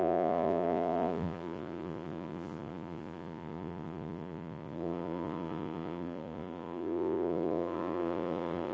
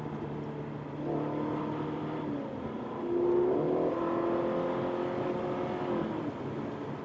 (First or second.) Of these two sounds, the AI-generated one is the first